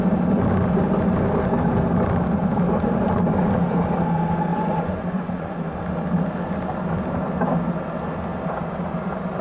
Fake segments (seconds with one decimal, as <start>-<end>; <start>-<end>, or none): 4.5-5.7